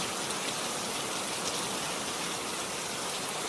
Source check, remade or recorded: recorded